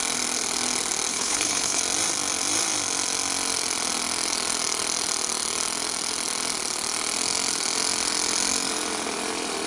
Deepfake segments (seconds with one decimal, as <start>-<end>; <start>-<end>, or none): 1.1-1.8